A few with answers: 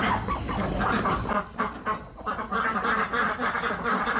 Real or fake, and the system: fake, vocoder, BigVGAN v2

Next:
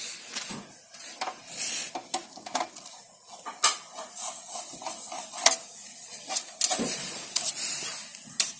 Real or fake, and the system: real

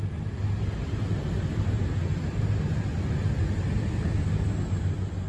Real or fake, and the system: real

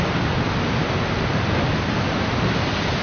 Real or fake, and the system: real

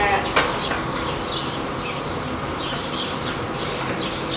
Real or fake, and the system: real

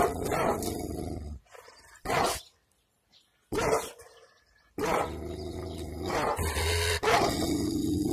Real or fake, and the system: real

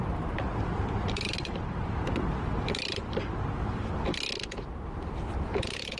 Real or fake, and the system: real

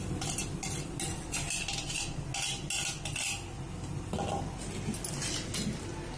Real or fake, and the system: real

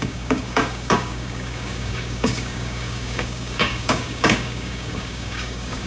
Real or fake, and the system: fake, codec, DAC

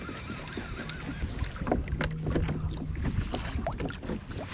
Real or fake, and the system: real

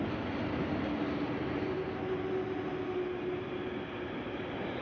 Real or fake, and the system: real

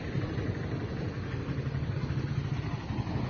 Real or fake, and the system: real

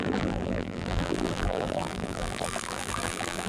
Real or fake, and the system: fake, vocoder, BigVGAN v2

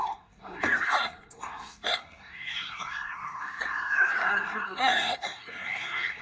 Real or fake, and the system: fake, codec, SNAC